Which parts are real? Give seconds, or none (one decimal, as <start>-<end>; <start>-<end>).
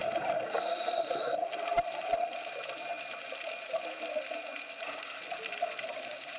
0.0-6.4